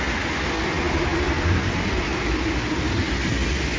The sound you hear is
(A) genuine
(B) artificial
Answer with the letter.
A